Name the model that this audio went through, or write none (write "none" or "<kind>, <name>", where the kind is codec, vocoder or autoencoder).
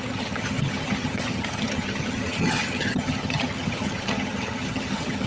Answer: vocoder, HiFi-GAN